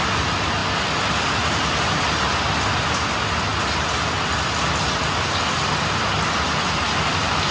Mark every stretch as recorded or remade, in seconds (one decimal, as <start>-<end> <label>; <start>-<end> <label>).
0.0-7.5 recorded